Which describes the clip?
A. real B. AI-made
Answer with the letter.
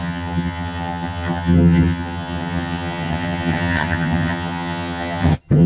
B